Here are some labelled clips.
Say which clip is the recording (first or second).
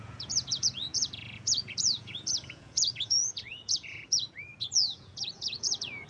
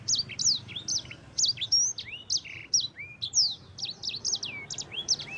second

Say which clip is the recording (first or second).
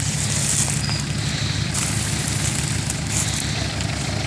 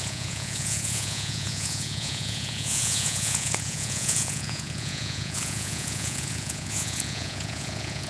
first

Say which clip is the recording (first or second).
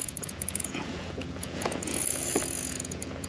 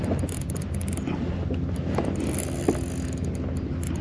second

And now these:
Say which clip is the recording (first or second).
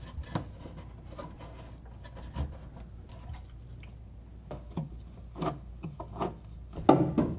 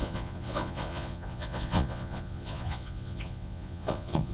first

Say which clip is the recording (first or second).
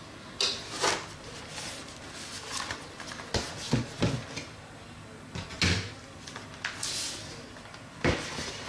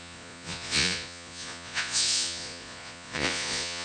first